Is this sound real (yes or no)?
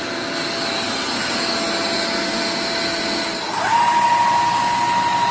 yes